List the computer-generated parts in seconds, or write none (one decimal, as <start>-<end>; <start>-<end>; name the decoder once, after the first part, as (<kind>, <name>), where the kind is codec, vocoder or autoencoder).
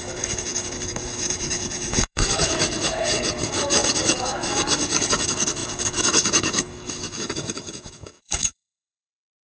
0.0-9.5 (codec, DAC)